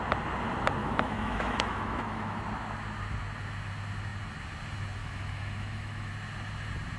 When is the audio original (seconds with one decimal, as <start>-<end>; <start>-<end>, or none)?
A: 0.0-0.8; 2.4-5.0; 6.1-7.0